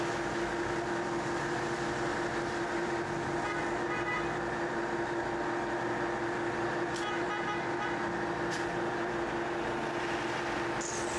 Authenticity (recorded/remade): recorded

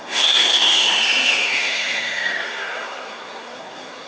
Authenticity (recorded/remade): remade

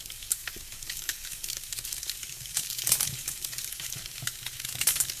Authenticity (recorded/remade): remade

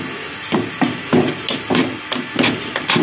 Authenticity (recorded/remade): recorded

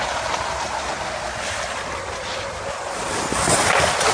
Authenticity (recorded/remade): recorded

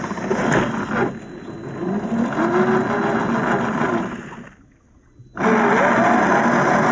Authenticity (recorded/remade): recorded